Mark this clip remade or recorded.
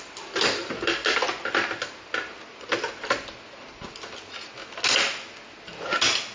recorded